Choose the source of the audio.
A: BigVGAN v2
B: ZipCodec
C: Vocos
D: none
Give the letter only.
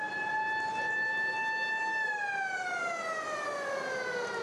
D